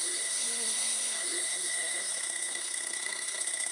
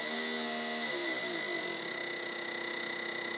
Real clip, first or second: second